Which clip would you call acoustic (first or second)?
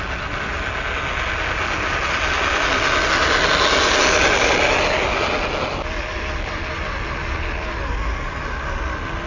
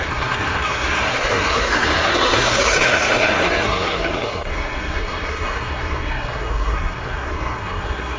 first